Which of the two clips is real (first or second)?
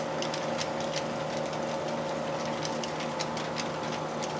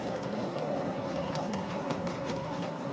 first